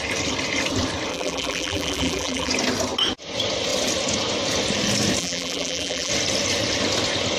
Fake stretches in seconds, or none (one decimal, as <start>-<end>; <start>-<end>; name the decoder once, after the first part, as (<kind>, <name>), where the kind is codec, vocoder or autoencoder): 1.1-2.5 (vocoder, BigVGAN v2); 5.2-6.1